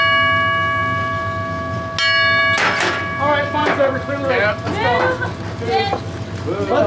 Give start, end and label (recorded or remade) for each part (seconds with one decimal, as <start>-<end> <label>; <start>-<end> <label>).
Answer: 0.0-6.9 recorded